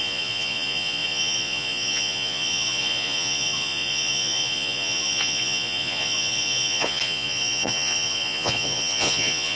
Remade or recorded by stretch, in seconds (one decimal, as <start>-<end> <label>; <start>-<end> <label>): 0.0-9.6 remade